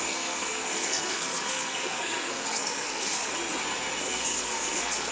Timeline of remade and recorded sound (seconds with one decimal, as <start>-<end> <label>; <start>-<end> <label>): 0.0-3.3 remade; 3.3-4.0 recorded; 4.0-5.1 remade